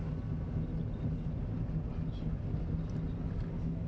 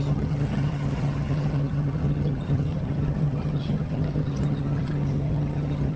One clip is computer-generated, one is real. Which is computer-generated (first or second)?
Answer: second